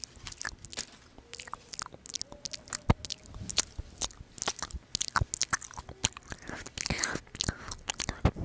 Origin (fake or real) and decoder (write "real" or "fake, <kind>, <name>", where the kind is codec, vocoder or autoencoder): real